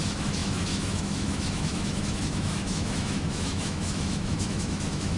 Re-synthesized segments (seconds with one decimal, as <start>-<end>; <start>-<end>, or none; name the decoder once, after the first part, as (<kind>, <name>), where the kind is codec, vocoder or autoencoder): 0.0-5.2 (autoencoder, DAC-VAE)

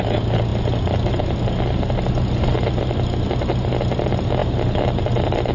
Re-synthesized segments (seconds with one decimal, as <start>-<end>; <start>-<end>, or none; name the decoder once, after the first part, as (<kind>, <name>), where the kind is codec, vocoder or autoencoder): none

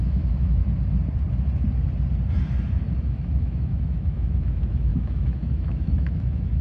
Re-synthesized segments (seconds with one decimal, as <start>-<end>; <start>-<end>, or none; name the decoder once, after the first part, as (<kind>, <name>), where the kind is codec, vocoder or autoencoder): 0.0-0.6 (autoencoder, DAC-VAE); 3.0-6.6

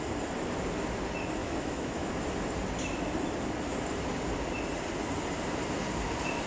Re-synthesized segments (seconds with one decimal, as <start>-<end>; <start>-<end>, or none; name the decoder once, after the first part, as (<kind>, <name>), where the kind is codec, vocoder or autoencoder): 1.4-2.1 (autoencoder, DAC-VAE)

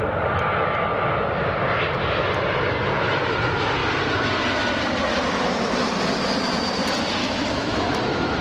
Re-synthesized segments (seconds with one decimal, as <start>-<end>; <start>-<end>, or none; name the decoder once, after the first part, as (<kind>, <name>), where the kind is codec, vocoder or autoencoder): 7.2-8.4 (autoencoder, DAC-VAE)

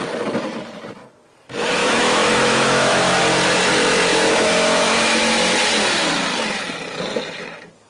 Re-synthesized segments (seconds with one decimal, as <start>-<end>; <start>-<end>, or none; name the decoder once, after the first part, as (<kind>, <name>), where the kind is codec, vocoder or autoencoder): 1.8-3.2 (autoencoder, DAC-VAE); 4.1-5.2

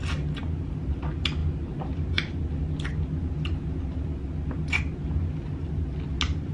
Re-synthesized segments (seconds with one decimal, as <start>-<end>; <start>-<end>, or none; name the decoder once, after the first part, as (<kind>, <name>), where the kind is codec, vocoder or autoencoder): none

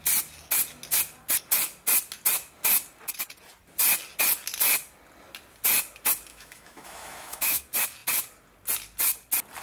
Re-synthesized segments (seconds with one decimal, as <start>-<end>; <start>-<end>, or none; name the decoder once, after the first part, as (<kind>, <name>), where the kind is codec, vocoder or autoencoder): 6.3-7.6 (autoencoder, DAC-VAE)